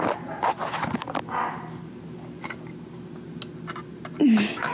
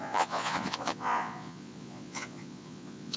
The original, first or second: first